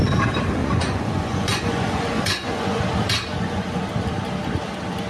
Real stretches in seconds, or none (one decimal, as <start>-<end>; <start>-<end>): 0.0-0.6; 2.8-3.3; 3.8-5.1